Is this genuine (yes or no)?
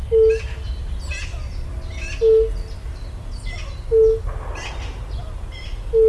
yes